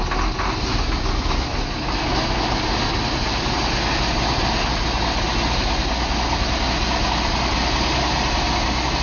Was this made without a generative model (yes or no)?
yes